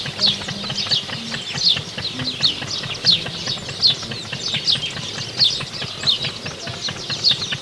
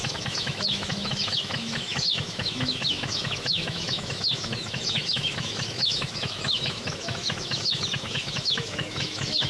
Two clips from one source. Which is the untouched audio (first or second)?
first